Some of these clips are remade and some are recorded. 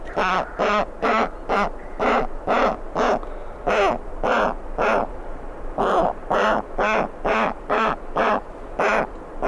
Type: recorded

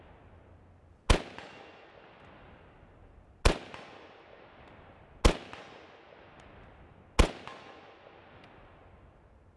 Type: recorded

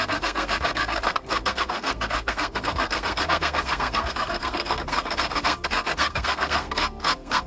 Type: remade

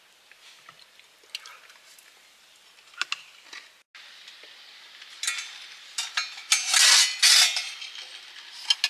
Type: recorded